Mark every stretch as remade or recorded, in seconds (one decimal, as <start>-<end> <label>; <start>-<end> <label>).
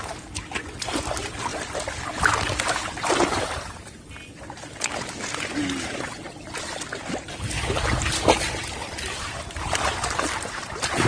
0.0-11.1 recorded